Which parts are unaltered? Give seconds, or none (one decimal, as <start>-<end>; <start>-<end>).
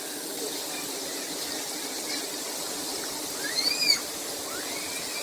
0.0-2.9; 3.7-5.2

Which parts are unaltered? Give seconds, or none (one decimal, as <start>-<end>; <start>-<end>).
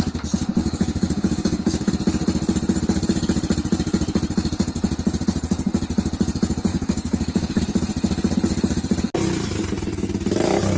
0.0-0.6; 1.9-6.7; 7.6-10.8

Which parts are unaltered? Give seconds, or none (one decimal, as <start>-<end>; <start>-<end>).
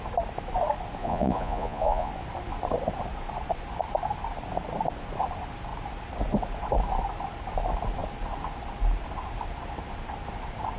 0.0-1.0; 2.1-10.8